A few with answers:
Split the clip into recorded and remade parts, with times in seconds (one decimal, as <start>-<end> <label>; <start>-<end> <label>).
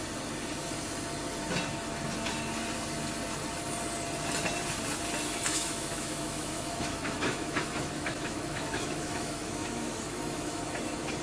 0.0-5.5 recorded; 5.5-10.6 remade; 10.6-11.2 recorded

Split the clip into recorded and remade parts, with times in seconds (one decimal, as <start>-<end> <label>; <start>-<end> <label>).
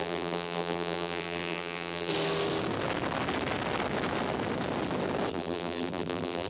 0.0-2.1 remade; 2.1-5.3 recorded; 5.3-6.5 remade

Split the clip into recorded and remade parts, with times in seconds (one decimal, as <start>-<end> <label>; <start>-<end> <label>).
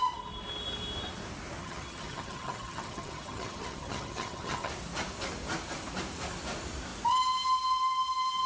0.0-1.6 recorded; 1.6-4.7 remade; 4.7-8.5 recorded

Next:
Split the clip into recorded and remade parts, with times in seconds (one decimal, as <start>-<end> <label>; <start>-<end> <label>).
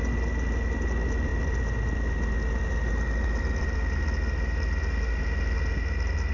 0.0-6.3 recorded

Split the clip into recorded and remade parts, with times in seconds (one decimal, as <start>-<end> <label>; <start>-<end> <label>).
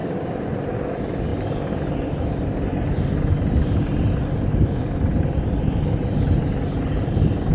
0.0-7.5 recorded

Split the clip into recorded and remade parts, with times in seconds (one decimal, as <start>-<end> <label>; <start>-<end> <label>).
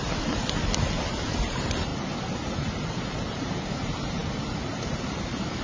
0.0-1.9 remade; 1.9-2.5 recorded; 2.5-5.6 remade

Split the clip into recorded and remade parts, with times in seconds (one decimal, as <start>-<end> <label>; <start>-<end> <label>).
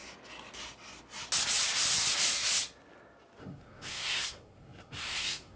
0.0-3.4 recorded; 3.4-5.6 remade